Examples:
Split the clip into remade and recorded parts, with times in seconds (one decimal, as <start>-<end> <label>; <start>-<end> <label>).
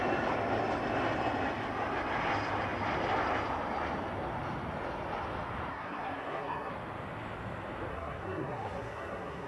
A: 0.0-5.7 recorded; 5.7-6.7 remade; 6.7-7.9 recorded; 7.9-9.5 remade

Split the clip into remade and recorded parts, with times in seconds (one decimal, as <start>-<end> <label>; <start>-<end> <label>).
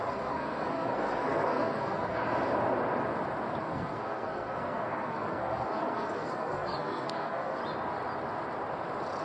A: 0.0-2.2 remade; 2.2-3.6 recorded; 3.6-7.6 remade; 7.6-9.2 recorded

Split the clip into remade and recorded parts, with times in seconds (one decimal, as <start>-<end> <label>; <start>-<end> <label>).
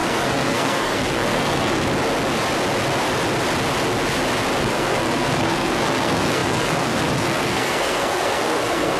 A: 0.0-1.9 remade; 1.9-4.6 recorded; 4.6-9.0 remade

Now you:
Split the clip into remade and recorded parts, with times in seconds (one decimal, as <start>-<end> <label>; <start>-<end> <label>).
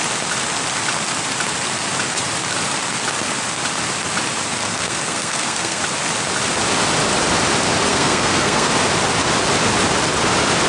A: 0.0-4.6 recorded; 4.6-5.8 remade; 5.8-7.9 recorded; 7.9-8.7 remade; 8.7-10.7 recorded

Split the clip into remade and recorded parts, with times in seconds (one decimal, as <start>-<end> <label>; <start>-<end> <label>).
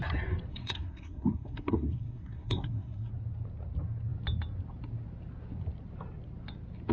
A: 0.0-0.5 recorded; 0.5-3.1 remade; 3.1-6.9 recorded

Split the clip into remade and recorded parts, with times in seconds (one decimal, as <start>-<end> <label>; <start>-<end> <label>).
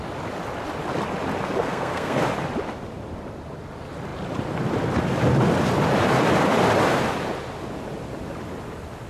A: 0.0-1.6 recorded; 1.6-2.2 remade; 2.2-9.1 recorded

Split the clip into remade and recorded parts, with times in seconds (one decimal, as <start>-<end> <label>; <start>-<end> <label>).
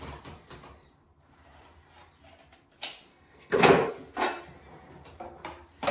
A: 0.0-3.1 recorded; 3.1-3.9 remade; 3.9-5.9 recorded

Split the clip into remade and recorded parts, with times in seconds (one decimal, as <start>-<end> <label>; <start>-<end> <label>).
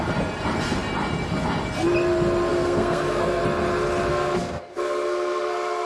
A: 0.0-2.5 recorded; 2.5-3.4 remade; 3.4-4.1 recorded; 4.1-5.9 remade